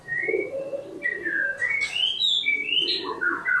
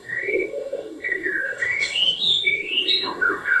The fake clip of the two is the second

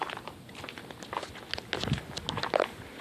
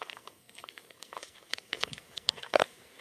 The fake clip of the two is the second